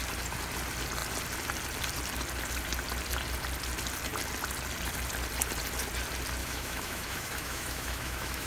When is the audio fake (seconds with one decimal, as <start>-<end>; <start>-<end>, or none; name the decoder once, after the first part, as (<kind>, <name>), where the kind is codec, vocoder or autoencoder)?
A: 6.4-8.5 (autoencoder, DAC-VAE)